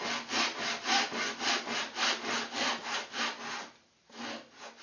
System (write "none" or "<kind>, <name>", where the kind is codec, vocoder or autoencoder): none